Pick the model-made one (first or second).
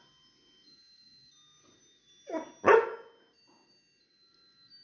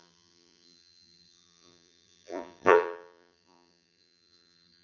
second